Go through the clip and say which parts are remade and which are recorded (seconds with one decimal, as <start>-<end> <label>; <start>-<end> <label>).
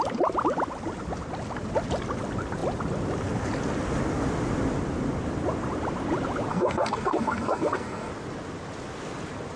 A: 0.0-6.5 recorded; 6.5-8.1 remade; 8.1-9.6 recorded